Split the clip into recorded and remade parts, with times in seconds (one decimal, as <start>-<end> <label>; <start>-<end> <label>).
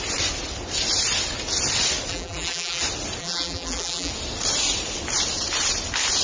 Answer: 0.0-2.1 recorded; 2.1-2.8 remade; 2.8-3.2 recorded; 3.2-4.1 remade; 4.1-6.2 recorded